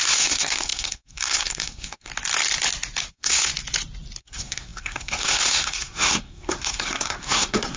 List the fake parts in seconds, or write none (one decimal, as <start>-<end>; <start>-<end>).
0.0-2.1; 3.1-3.5; 4.2-7.8